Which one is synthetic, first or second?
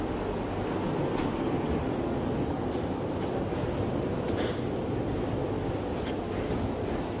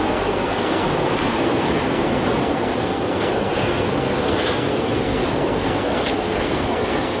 second